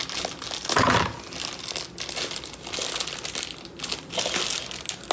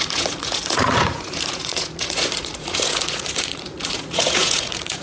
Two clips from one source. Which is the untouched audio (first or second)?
first